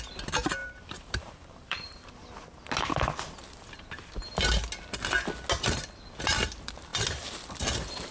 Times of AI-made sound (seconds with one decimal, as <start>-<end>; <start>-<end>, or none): 0.6-2.1